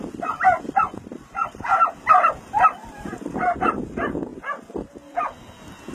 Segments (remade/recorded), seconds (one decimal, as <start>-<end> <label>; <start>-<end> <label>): 0.0-1.1 recorded; 1.1-3.9 remade; 3.9-4.3 recorded; 4.3-5.9 remade